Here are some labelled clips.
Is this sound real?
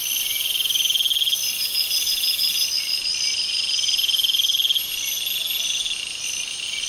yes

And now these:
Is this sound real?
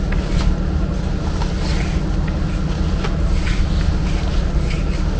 yes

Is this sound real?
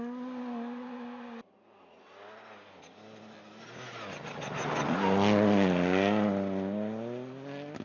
yes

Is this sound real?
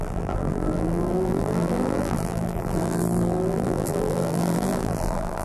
no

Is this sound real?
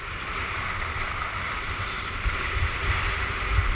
yes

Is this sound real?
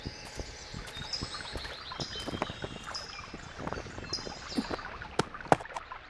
yes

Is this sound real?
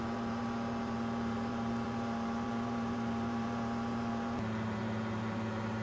no